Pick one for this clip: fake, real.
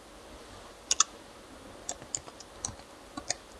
real